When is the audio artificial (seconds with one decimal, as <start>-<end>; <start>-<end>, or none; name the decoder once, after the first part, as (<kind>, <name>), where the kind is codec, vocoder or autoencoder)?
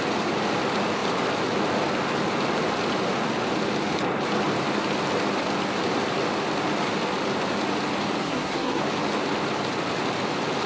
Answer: 8.2-8.8 (codec, SNAC)